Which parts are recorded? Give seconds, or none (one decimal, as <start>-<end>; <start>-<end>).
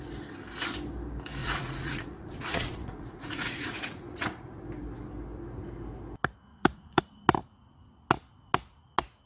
0.0-1.4; 4.6-6.5; 7.0-9.3